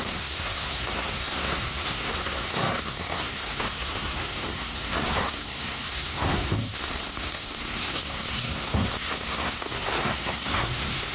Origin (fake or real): fake